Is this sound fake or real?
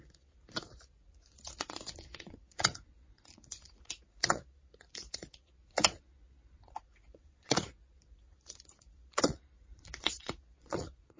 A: fake